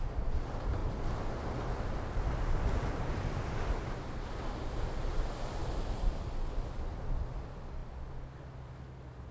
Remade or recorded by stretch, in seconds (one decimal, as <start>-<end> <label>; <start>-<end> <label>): 0.0-9.3 recorded